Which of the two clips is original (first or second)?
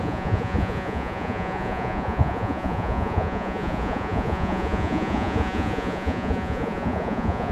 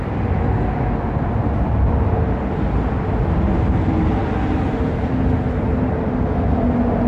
second